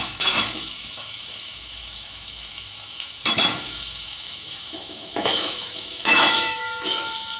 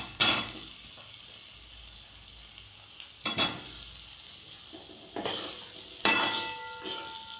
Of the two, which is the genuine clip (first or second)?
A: second